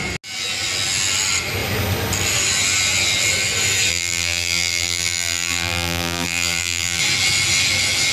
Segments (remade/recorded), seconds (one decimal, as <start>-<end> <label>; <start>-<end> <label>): 0.0-3.9 recorded; 3.9-7.0 remade; 7.0-8.1 recorded